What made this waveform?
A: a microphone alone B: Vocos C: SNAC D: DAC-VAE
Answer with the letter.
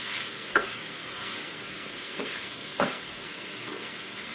C